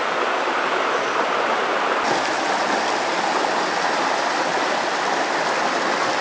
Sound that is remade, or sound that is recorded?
recorded